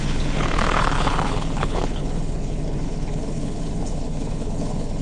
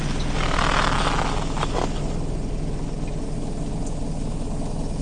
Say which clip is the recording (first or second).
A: second